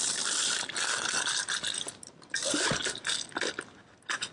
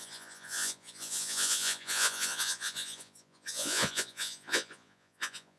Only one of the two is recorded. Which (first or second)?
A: first